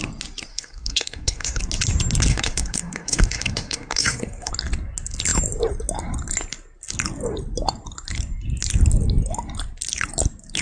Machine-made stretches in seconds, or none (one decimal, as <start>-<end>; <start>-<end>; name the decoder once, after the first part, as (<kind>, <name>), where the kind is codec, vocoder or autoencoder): 0.5-1.6 (codec, SNAC); 2.3-4.5